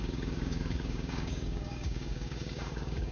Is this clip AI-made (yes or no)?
yes